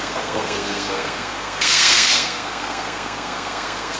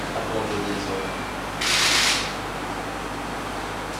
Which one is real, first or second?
second